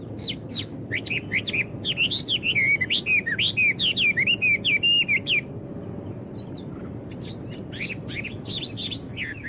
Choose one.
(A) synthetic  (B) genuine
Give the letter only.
B